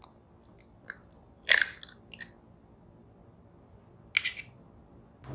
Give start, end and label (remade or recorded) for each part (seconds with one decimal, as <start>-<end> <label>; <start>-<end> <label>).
0.0-5.3 recorded